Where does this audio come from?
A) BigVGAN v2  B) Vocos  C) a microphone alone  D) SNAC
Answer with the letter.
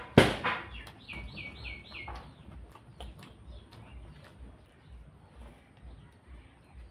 C